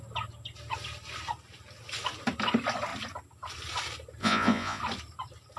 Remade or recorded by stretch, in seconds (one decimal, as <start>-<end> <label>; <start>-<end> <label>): 0.0-4.2 recorded; 4.2-4.8 remade; 4.8-5.6 recorded